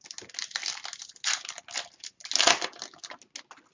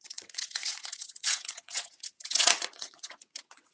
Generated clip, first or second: second